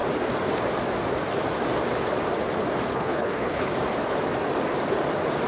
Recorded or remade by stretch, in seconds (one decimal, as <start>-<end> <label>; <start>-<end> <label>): 0.0-2.9 recorded; 2.9-3.7 remade; 3.7-5.5 recorded